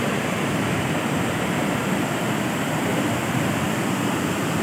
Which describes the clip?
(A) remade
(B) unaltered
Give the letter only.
A